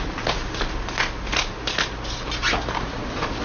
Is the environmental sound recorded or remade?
recorded